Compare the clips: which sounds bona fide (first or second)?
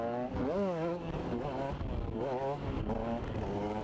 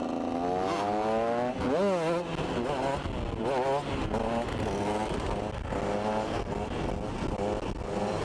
second